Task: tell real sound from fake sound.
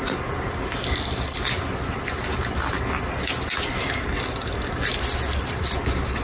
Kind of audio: real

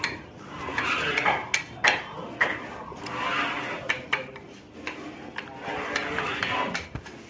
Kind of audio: real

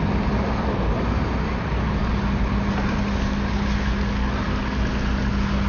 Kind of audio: real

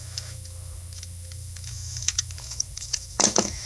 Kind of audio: fake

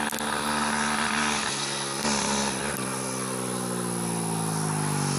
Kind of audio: real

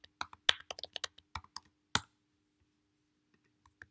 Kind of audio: real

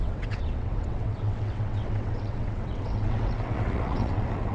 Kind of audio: fake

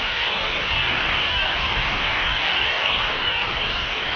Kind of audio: fake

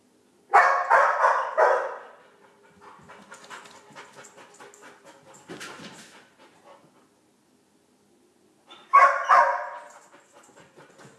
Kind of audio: real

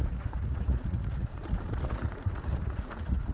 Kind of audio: fake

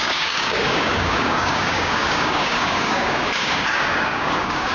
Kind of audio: fake